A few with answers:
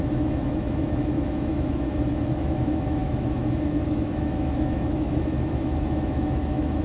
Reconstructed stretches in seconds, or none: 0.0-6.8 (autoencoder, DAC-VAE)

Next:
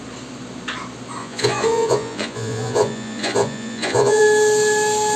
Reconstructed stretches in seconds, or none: 1.2-4.2 (vocoder, Vocos)